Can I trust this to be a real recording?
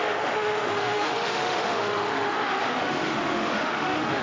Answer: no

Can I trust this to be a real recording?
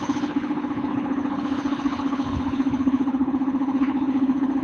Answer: no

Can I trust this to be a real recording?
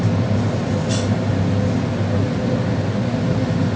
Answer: yes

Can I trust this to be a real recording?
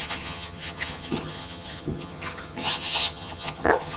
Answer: no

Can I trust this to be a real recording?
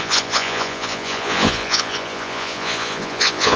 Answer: no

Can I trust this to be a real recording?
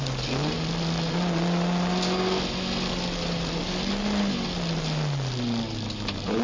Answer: yes